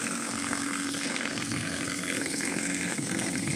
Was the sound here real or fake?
fake